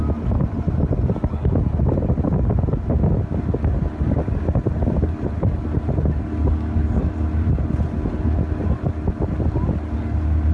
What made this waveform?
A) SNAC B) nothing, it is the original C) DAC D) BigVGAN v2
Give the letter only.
B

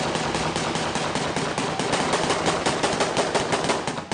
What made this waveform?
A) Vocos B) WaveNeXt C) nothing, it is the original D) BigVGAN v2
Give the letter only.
C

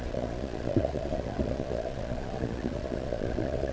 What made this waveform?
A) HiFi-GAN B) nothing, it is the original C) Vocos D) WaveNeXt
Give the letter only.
C